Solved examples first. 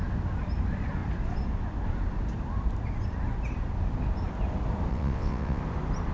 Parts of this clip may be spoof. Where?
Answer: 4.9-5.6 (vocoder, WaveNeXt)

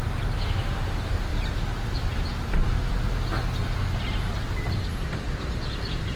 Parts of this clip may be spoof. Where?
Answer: none

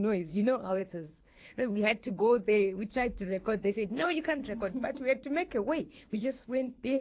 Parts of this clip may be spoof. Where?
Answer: 0.0-4.4 (codec, HILCodec); 5.8-7.0